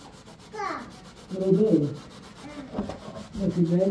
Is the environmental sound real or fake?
real